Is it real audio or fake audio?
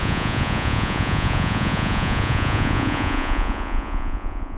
fake